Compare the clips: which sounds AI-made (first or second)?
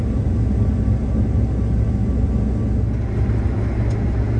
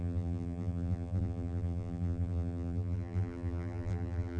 second